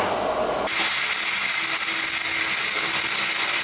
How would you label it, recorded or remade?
recorded